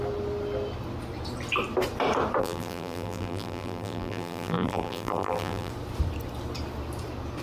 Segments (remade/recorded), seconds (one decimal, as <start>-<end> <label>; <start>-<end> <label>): 0.0-2.4 recorded; 2.4-5.7 remade; 5.7-7.4 recorded